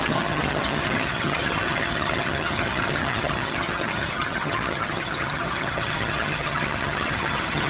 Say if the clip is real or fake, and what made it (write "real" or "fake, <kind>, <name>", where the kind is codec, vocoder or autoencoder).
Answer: fake, vocoder, HiFi-GAN